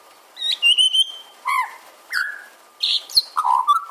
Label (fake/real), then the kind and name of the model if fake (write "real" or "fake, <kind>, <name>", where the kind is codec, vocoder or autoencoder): fake, vocoder, BigVGAN v2